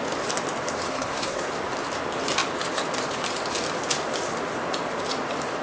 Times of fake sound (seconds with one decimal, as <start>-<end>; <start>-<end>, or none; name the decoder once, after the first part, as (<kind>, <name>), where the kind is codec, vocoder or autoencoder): 0.9-1.5 (codec, SNAC)